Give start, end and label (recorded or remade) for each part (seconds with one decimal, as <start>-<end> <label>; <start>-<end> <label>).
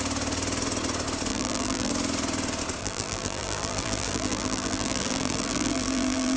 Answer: 0.0-1.3 recorded; 1.3-1.9 remade; 1.9-2.8 recorded; 2.8-6.4 remade